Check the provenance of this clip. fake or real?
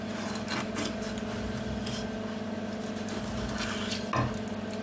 real